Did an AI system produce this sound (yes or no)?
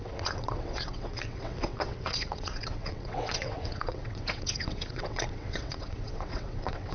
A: yes